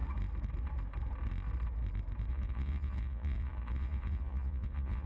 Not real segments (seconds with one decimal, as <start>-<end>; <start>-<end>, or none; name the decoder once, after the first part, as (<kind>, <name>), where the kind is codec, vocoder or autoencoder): 2.3-5.1 (vocoder, Vocos)

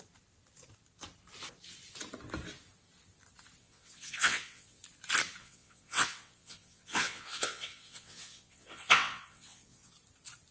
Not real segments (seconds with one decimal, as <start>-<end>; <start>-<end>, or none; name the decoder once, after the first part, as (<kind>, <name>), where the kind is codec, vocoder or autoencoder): 3.6-4.8 (vocoder, WaveNeXt); 5.4-9.9

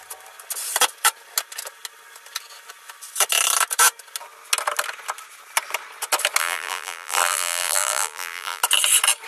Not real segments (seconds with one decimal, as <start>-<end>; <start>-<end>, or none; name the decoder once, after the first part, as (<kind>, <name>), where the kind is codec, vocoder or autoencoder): 6.4-8.6 (vocoder, BigVGAN v2)

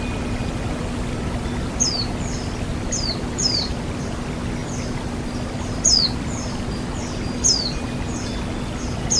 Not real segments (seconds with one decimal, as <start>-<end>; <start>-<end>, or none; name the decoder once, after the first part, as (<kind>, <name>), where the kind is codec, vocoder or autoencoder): 2.7-3.7 (vocoder, BigVGAN v2)

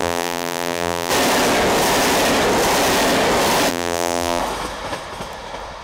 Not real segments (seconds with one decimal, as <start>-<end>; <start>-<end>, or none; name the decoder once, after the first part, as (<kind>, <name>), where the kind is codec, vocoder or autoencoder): 0.0-1.1 (vocoder, BigVGAN v2); 3.7-4.4